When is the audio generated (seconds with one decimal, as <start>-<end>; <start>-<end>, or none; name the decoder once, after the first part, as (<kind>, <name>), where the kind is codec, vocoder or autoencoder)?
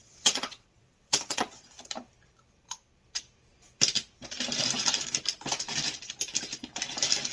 0.0-1.7 (vocoder, WaveNeXt)